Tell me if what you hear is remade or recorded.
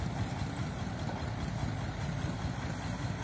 recorded